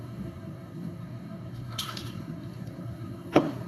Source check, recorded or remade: remade